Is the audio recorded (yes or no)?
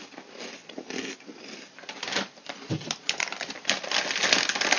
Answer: yes